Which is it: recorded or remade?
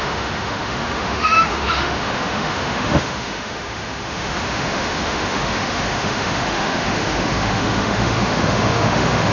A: remade